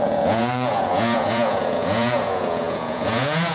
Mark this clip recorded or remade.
remade